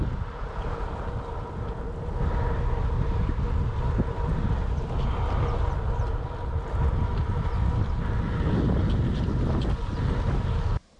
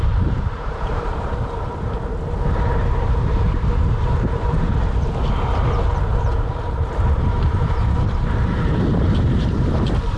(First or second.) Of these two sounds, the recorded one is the first